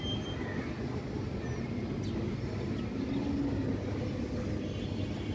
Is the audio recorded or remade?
recorded